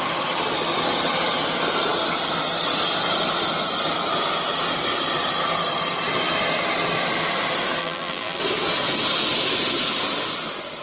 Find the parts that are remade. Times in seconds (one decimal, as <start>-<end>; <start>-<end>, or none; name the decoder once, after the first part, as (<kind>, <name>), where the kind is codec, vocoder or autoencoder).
7.8-8.4 (vocoder, BigVGAN v2)